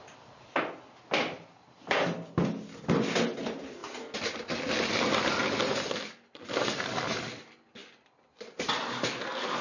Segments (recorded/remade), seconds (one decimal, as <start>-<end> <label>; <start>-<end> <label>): 0.0-9.6 recorded